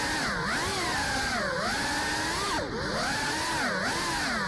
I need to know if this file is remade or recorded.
recorded